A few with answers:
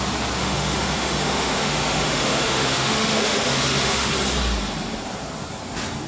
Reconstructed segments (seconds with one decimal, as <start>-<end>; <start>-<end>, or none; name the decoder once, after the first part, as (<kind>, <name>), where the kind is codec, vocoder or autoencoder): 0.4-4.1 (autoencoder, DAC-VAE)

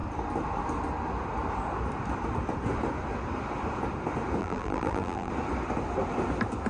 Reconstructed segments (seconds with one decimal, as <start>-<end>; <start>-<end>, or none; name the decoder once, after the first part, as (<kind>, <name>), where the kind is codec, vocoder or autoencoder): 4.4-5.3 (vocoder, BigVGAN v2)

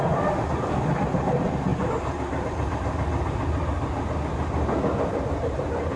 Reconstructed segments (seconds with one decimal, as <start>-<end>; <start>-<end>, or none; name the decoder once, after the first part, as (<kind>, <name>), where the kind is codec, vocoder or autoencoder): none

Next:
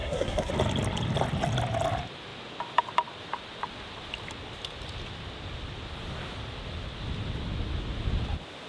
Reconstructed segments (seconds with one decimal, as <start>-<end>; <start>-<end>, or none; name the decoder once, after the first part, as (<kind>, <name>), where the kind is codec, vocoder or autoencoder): 0.0-0.5 (codec, SNAC)

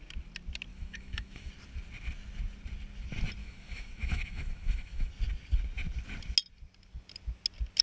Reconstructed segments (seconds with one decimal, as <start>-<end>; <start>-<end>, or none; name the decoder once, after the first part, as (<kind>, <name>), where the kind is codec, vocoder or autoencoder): 0.7-1.5 (autoencoder, DAC-VAE); 3.4-5.1

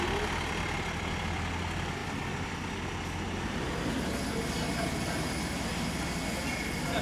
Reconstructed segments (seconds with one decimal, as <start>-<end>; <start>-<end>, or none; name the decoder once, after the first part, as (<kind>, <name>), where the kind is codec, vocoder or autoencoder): none

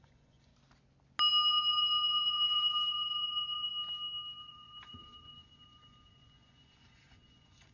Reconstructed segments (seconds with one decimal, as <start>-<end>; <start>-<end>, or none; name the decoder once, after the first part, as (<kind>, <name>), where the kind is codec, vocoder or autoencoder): 0.0-0.5 (vocoder, Vocos); 1.5-3.7; 4.4-7.7

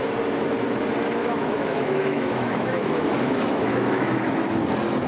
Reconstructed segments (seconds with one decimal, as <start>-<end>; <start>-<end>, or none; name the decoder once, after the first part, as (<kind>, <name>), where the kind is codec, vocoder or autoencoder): 1.2-4.3 (autoencoder, DAC-VAE)